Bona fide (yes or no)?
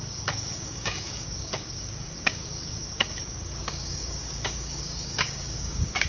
no